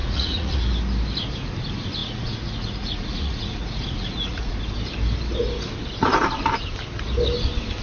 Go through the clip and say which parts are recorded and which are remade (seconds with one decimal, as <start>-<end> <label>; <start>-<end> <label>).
0.0-0.6 remade; 0.6-2.0 recorded; 2.0-4.6 remade; 4.6-7.8 recorded